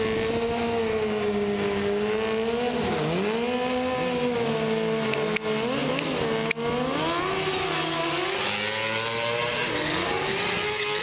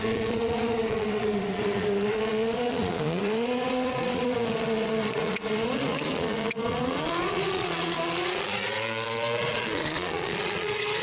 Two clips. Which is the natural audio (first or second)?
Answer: first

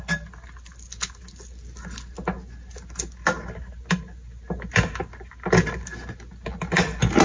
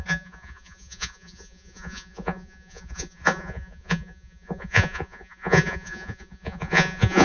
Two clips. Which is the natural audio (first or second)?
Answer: first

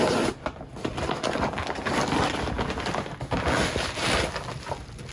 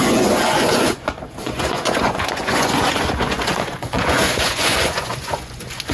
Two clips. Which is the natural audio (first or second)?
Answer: first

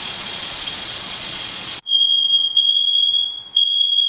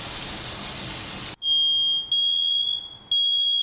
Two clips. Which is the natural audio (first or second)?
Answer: second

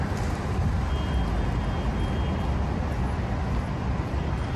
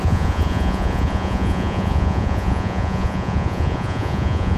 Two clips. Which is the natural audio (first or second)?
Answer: first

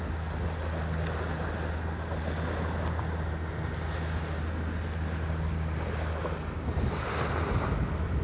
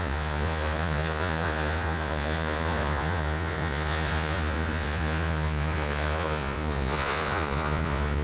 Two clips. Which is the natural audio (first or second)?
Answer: first